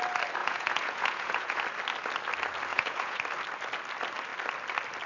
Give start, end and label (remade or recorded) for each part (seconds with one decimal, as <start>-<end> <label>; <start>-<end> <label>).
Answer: 0.0-0.4 recorded; 0.4-1.6 remade; 1.6-2.7 recorded; 2.7-3.2 remade; 3.2-5.1 recorded